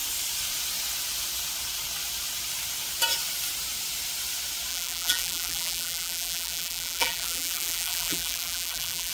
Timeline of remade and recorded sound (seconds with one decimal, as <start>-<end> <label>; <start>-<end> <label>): 0.0-4.7 recorded; 4.7-9.1 remade